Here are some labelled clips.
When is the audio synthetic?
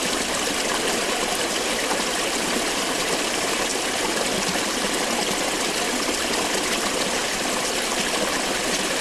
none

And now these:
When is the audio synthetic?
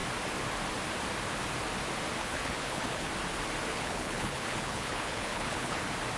2.2-3.1; 3.7-5.8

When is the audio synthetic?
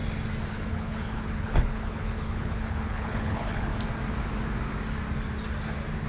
0.5-3.7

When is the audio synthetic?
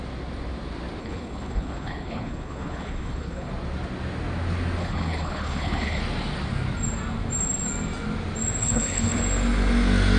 1.0-3.5; 4.8-6.0; 8.6-9.2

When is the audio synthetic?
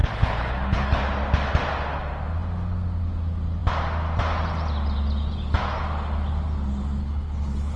0.0-1.0; 7.0-7.8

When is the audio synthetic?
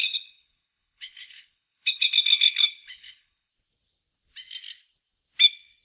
0.0-3.5